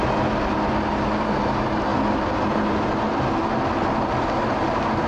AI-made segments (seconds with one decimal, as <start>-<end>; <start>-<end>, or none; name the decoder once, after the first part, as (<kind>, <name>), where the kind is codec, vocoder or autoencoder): none